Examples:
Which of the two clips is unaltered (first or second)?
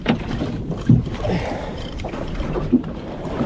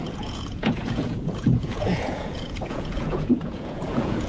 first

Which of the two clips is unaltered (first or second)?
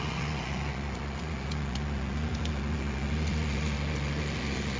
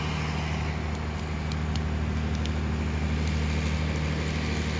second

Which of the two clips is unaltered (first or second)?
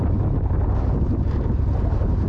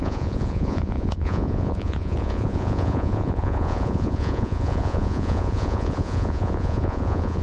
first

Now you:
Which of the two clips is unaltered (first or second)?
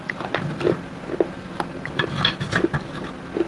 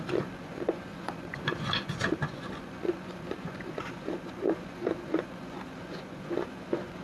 first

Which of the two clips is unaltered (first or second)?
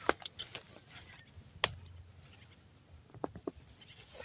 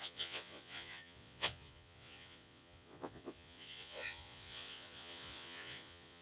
first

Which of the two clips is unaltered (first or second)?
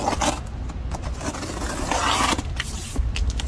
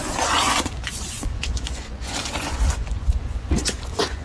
first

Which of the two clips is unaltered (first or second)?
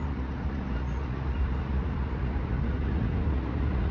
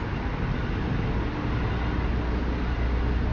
second